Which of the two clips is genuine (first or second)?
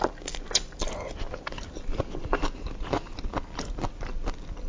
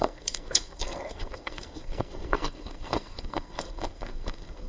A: first